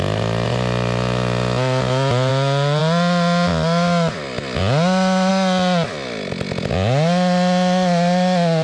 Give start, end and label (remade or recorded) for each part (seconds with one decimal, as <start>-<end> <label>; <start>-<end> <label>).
0.0-8.6 recorded